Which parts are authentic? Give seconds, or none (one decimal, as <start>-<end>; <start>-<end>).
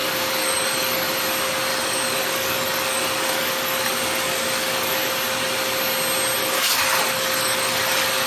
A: 1.2-1.7; 5.1-6.4